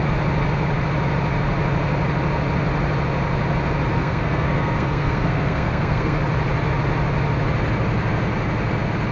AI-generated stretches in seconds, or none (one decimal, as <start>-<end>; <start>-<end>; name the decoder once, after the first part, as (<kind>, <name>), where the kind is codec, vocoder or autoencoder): 3.9-6.2 (codec, SNAC)